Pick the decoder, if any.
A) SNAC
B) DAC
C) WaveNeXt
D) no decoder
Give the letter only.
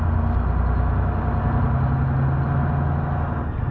D